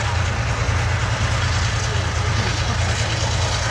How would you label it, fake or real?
real